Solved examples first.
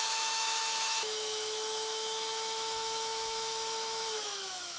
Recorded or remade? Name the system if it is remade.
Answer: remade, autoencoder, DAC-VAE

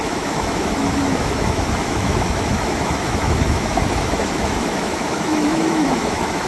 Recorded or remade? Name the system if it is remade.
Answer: remade, autoencoder, DAC-VAE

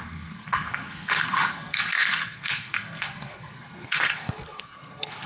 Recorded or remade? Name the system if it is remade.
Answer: remade, codec, SNAC